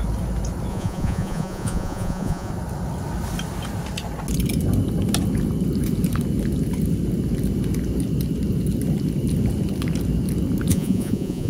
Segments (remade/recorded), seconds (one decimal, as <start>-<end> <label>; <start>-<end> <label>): 0.0-0.7 recorded; 0.7-2.5 remade; 2.5-10.7 recorded; 10.7-11.5 remade